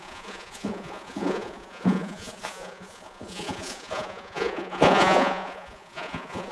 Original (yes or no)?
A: no